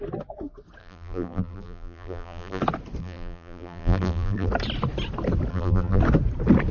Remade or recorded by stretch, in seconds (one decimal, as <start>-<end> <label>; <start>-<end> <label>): 0.0-0.8 recorded; 0.8-2.6 remade; 2.6-3.0 recorded; 3.0-4.5 remade; 4.5-5.5 recorded; 5.5-6.0 remade; 6.0-6.7 recorded